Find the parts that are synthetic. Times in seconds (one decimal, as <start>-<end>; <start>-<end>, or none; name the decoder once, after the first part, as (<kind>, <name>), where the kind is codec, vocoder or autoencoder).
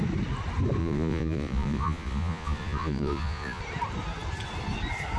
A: 0.8-3.6 (vocoder, Vocos)